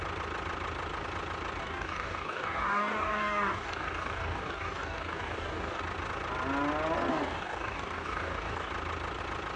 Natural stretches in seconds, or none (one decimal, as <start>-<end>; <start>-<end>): 0.0-1.6; 5.8-7.1; 8.7-9.6